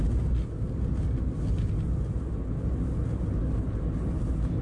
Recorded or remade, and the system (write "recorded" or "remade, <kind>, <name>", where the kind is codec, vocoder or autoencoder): recorded